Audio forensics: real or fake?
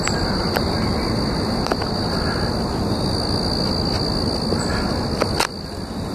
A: real